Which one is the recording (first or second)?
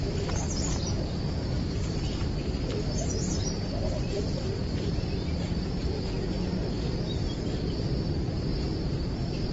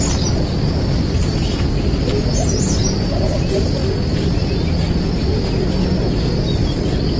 second